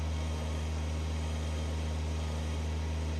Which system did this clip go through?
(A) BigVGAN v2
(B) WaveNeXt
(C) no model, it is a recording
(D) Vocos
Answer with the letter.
C